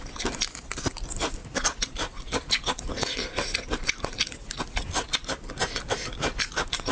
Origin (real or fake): real